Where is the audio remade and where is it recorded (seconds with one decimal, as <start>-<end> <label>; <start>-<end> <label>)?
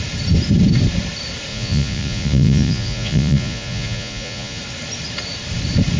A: 0.0-1.5 recorded; 1.5-4.6 remade; 4.6-6.0 recorded